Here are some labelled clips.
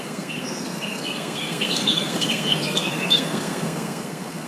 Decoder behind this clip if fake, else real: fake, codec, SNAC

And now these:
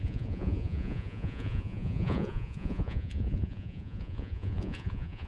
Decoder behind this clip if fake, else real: fake, vocoder, Vocos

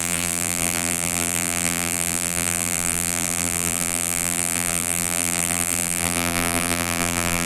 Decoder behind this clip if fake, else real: fake, vocoder, BigVGAN v2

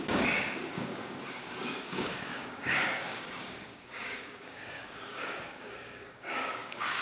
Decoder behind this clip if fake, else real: fake, codec, DAC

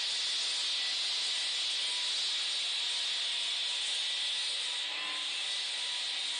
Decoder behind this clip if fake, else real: real